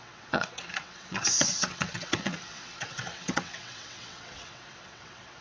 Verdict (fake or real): fake